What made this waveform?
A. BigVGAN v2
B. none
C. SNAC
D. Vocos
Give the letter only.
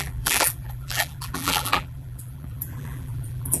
A